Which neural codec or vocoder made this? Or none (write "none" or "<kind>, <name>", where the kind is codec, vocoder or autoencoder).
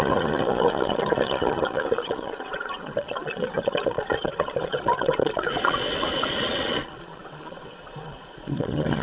vocoder, Vocos